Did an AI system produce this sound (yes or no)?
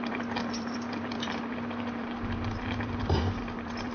yes